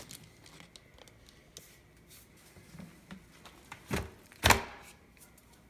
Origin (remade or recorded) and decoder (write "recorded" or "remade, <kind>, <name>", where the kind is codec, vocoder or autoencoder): recorded